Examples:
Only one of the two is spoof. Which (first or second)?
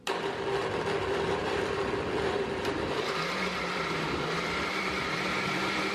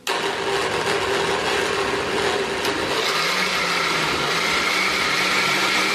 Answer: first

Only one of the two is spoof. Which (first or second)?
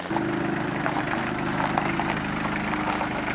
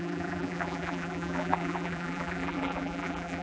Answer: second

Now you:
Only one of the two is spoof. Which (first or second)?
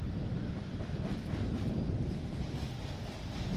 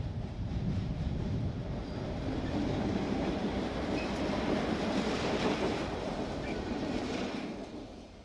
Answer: second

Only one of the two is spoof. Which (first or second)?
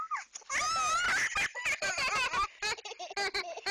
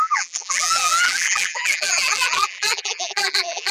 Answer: second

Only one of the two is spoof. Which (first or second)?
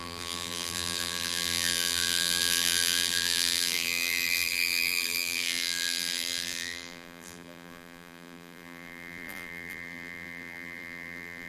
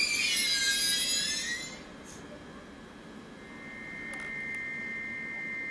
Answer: first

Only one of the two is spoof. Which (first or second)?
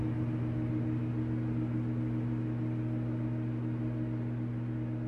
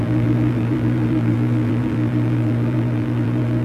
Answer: second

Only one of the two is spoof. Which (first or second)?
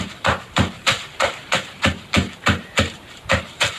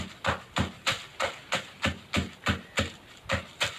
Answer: first